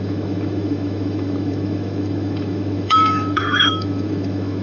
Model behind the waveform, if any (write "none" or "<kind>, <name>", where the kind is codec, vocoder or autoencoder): autoencoder, DAC-VAE